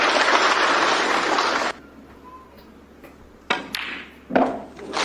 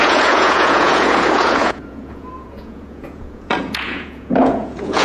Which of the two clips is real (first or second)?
first